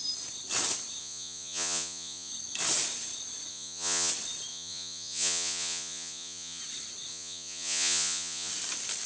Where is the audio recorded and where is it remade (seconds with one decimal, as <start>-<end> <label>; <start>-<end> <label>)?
0.0-1.0 recorded; 1.0-2.3 remade; 2.3-3.5 recorded; 3.5-4.1 remade; 4.1-4.5 recorded; 4.5-6.6 remade; 6.6-7.1 recorded; 7.1-8.5 remade; 8.5-9.1 recorded